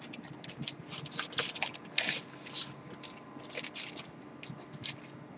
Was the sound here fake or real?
real